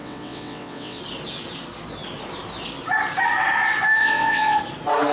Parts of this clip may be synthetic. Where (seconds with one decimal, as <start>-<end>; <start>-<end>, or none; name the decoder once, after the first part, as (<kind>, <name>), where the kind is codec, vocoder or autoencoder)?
0.0-1.0 (vocoder, WaveNeXt); 4.0-4.6